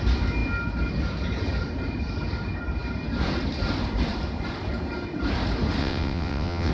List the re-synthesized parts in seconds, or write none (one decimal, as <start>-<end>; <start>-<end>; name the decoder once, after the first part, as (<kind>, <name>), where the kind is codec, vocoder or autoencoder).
5.8-6.7 (vocoder, WaveNeXt)